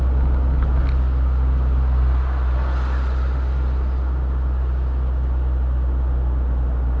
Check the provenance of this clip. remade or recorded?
recorded